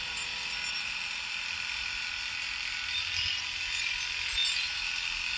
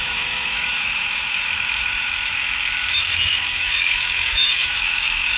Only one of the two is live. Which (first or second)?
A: first